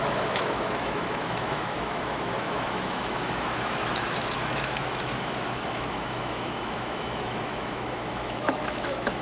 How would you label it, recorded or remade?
remade